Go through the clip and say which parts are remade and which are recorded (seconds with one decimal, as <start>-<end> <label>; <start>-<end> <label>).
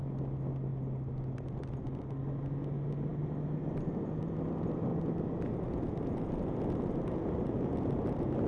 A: 0.0-8.5 recorded